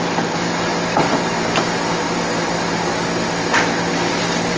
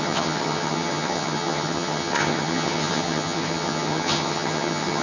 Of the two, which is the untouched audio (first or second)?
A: first